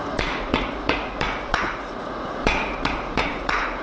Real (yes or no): no